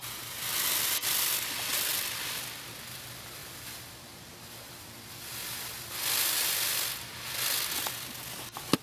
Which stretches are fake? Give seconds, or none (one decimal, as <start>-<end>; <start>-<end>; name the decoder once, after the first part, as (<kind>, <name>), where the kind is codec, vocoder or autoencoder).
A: none